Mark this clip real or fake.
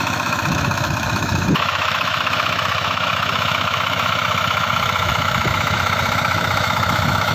fake